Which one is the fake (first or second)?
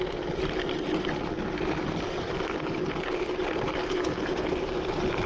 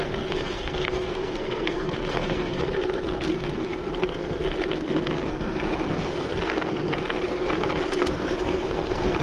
second